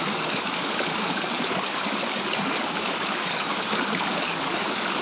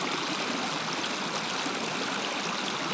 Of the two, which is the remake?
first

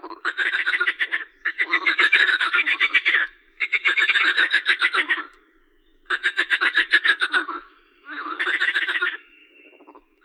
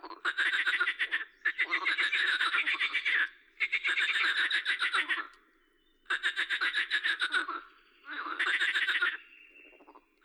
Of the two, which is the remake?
first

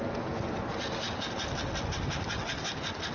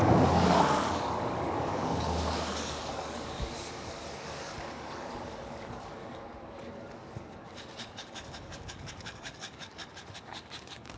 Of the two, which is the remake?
second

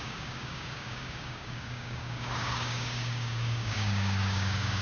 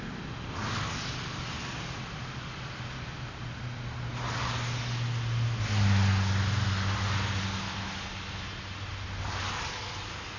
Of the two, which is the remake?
first